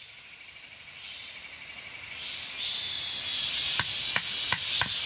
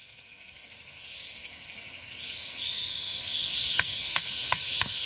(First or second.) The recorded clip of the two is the first